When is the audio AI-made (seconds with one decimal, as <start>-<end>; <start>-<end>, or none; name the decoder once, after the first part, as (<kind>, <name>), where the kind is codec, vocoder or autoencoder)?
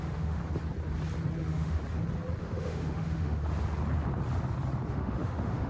0.0-0.4 (autoencoder, DAC-VAE); 1.4-1.8; 2.4-3.4; 4.9-5.7